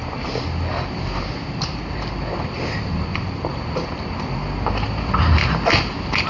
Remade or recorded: recorded